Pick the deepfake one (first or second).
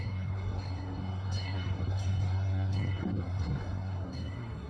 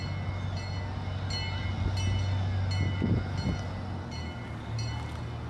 first